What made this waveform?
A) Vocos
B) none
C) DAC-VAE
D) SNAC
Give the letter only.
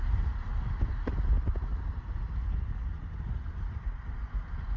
B